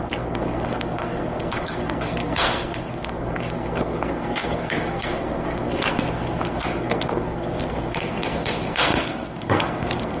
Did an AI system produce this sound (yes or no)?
yes